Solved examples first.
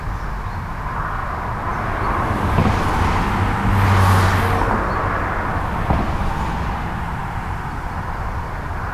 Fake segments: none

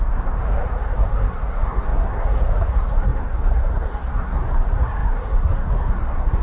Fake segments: 0.0-6.4 (codec, SNAC)

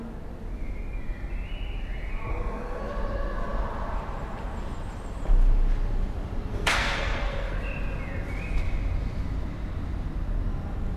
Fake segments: 2.3-2.8 (codec, SNAC); 6.5-7.6

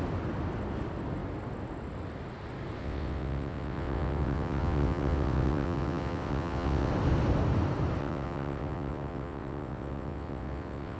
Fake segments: 2.8-6.9 (vocoder, WaveNeXt); 8.0-11.0